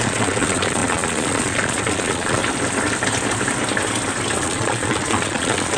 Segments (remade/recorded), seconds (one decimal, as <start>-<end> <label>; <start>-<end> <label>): 0.0-2.4 remade; 2.4-4.4 recorded; 4.4-5.8 remade